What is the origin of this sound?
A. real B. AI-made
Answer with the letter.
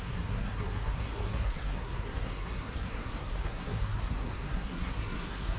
B